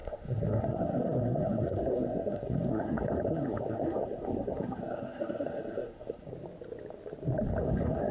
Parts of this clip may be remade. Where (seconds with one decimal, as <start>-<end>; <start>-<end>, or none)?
0.0-6.3; 7.6-8.1